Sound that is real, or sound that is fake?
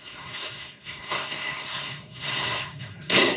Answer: fake